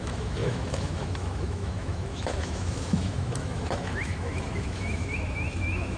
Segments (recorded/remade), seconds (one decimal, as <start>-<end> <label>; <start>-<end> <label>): 0.0-6.0 remade